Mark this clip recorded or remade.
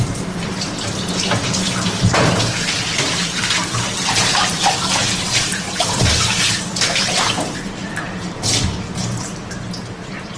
remade